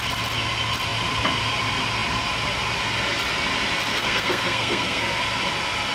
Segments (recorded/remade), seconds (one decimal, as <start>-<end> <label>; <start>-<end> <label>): 0.0-3.9 recorded; 3.9-5.2 remade; 5.2-5.9 recorded